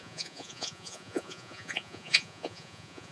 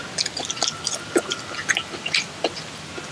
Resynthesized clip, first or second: first